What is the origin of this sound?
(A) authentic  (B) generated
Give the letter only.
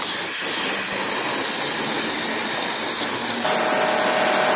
A